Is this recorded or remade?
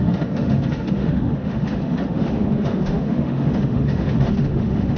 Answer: remade